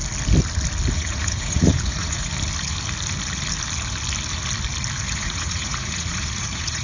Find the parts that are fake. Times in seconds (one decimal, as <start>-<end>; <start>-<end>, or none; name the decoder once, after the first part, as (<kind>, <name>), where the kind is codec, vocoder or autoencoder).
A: 0.9-2.3 (vocoder, Vocos); 5.1-6.8